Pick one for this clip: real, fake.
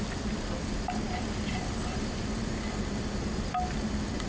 real